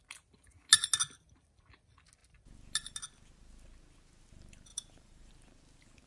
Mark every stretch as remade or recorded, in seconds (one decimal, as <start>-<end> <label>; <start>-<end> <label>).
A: 0.0-4.7 recorded; 4.7-5.3 remade; 5.3-6.1 recorded